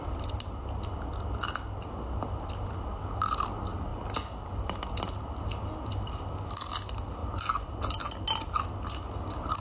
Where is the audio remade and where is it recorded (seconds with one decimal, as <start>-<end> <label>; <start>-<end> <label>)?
0.0-9.6 recorded